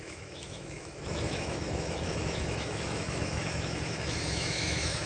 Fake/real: fake